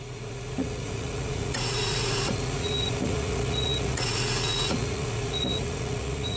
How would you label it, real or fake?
fake